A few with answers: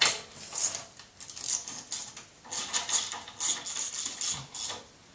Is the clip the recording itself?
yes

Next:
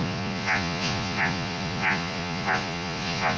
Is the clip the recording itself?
no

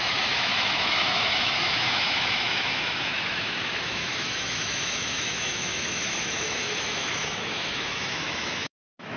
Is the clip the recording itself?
no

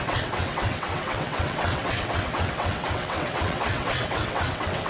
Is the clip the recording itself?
no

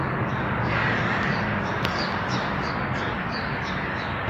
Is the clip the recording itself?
no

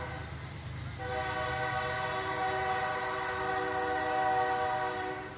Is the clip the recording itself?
yes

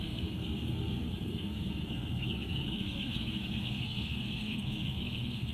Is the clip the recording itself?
no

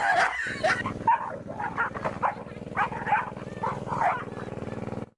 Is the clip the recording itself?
yes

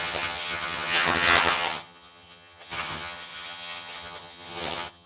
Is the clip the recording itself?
no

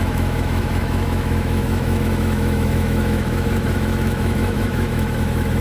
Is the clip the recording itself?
no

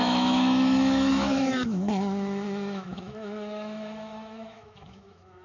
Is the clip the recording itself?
no